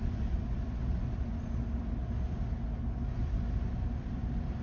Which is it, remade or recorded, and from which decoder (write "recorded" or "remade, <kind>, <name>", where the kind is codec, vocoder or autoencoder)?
recorded